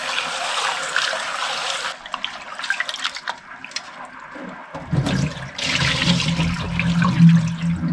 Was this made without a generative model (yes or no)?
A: yes